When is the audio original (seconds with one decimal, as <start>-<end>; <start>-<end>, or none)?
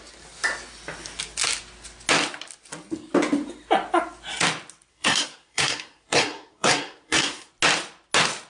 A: 0.0-4.9; 7.5-8.5